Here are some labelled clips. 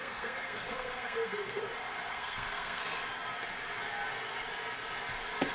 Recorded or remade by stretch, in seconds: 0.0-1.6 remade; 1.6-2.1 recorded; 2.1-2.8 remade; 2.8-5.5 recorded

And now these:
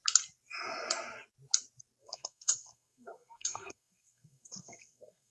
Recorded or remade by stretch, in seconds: 0.0-2.0 recorded; 2.0-5.3 remade

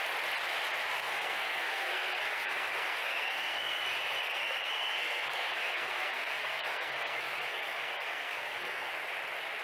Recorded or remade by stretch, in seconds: 0.0-0.9 recorded; 0.9-3.8 remade; 3.8-4.2 recorded; 4.2-8.9 remade; 8.9-9.6 recorded

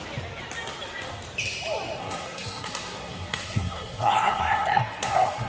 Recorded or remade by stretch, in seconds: 0.0-2.0 recorded; 2.0-5.5 remade

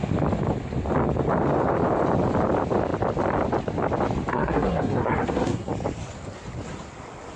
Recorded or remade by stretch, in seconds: 0.0-4.3 recorded; 4.3-5.7 remade; 5.7-7.4 recorded

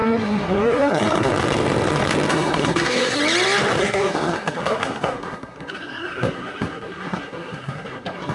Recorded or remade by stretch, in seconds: 0.0-1.3 remade; 1.3-2.3 recorded; 2.3-3.2 remade; 3.2-3.8 recorded; 3.8-8.3 remade

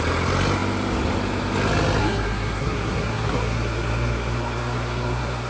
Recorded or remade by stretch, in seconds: 0.0-2.0 recorded; 2.0-5.5 remade